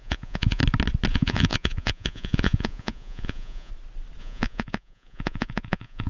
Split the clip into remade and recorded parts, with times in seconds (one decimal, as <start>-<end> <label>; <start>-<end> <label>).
0.0-0.6 remade; 0.6-1.1 recorded; 1.1-3.7 remade; 3.7-4.2 recorded; 4.2-6.1 remade